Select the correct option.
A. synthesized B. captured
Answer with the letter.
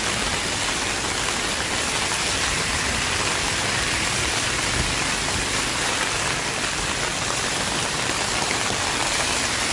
B